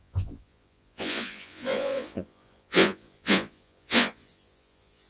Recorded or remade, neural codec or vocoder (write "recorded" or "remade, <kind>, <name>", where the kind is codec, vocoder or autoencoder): remade, vocoder, Vocos